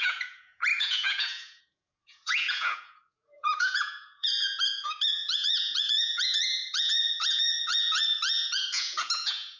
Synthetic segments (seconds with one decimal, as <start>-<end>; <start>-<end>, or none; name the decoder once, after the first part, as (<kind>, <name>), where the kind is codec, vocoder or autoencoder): 0.0-9.6 (vocoder, Vocos)